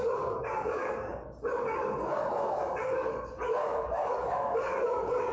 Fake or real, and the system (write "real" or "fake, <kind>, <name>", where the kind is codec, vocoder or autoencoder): fake, codec, DAC